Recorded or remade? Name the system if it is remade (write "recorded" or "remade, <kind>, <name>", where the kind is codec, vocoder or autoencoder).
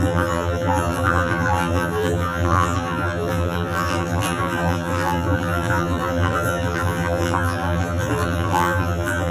remade, vocoder, BigVGAN v2